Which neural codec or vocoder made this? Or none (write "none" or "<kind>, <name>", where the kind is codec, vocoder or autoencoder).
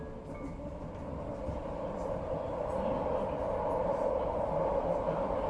none